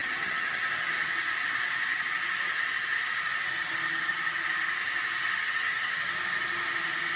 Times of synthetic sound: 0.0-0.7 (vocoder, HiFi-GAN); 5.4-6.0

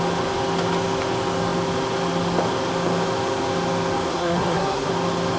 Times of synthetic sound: 4.1-4.9 (codec, SNAC)

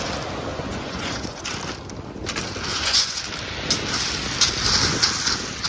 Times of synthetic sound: 0.5-1.4 (vocoder, Vocos); 2.7-3.2

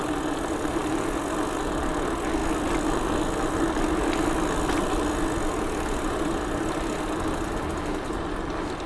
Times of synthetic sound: none

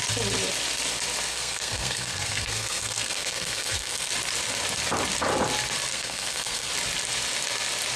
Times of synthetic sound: 1.3-4.1 (codec, SNAC); 5.9-6.7

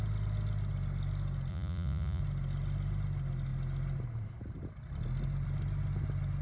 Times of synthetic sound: 1.5-2.2 (vocoder, Vocos)